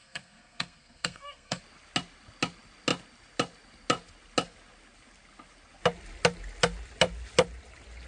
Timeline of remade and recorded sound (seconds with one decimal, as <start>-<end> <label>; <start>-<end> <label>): 0.0-1.6 remade; 1.6-8.1 recorded